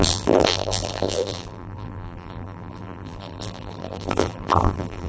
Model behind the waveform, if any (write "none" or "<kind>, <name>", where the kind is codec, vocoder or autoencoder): vocoder, BigVGAN v2